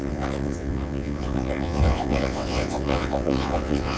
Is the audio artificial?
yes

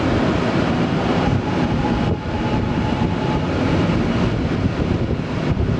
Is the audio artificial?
no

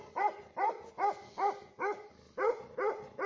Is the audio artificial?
no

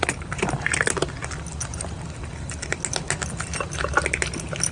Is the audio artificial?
no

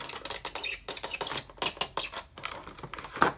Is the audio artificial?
no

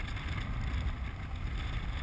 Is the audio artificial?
no